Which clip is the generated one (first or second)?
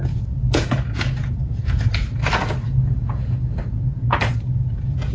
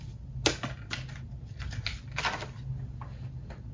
first